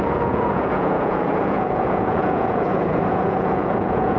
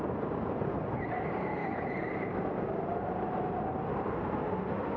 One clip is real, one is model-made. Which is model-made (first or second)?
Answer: first